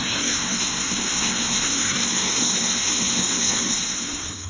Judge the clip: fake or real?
fake